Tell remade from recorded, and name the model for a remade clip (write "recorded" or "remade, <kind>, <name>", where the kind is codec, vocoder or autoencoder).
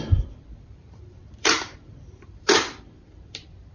remade, vocoder, BigVGAN v2